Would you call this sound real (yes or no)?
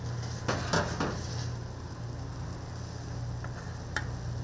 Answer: yes